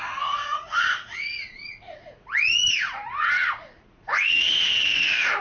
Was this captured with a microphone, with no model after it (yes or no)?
no